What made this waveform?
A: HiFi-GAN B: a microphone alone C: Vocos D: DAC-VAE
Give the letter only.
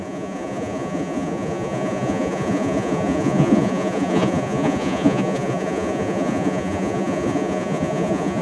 C